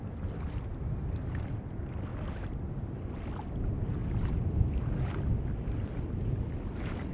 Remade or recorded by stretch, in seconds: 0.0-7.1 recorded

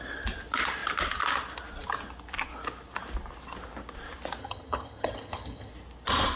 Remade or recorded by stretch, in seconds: 0.0-4.4 recorded; 4.4-5.7 remade; 5.7-6.4 recorded

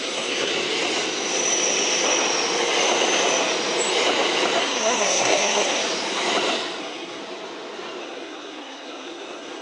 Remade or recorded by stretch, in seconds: 0.0-0.5 remade; 0.5-4.6 recorded; 4.6-5.8 remade; 5.8-6.8 recorded; 6.8-7.2 remade; 7.2-8.0 recorded; 8.0-9.6 remade

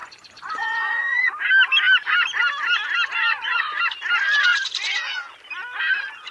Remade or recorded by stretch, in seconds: 0.0-1.3 remade; 1.3-3.3 recorded; 3.3-3.8 remade; 3.8-4.5 recorded; 4.5-5.3 remade; 5.3-6.3 recorded

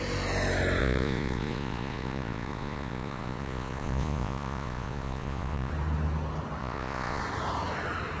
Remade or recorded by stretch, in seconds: 0.0-0.8 recorded; 0.8-5.7 remade; 5.7-6.6 recorded; 6.6-7.2 remade; 7.2-8.2 recorded

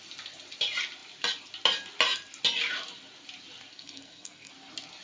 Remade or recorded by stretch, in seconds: 0.0-3.7 recorded; 3.7-4.5 remade; 4.5-5.0 recorded

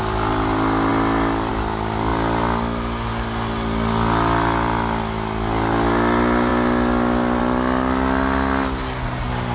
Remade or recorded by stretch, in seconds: 0.0-9.5 recorded

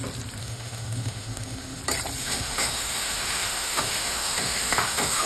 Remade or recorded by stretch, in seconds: 0.0-0.4 recorded; 0.4-1.8 remade; 1.8-2.2 recorded; 2.2-5.3 remade